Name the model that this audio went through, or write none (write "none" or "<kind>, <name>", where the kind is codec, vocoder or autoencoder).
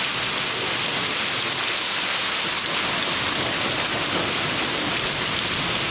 none